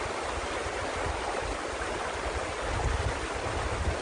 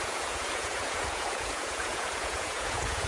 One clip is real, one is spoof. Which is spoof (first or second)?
second